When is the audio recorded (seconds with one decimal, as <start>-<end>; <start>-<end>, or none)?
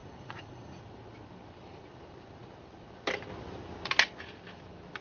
0.8-5.0